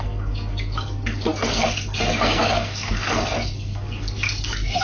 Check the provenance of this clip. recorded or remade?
remade